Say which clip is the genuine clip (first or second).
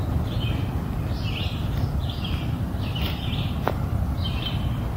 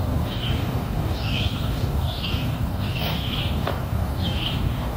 first